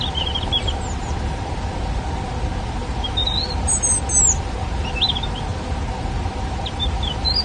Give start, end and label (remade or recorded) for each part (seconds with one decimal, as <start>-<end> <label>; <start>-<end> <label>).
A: 0.0-7.4 recorded